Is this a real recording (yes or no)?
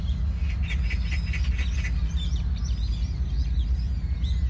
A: yes